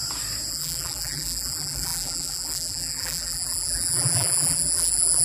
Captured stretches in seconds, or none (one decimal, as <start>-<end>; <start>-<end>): 0.0-0.5